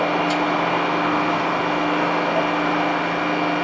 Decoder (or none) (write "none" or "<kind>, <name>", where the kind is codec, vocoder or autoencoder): none